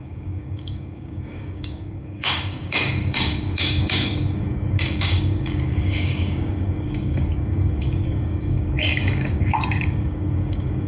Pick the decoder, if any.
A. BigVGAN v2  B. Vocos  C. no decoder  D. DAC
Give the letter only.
D